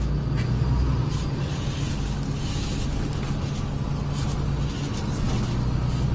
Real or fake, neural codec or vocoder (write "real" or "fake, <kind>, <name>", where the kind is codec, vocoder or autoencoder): real